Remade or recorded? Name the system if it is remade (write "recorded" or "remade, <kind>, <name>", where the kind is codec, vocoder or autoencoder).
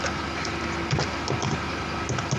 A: recorded